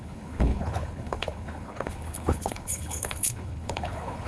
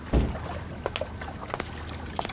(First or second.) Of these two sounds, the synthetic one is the first